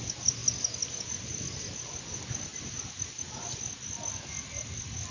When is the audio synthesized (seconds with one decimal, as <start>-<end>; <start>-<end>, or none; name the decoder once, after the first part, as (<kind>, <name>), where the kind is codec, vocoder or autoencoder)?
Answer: none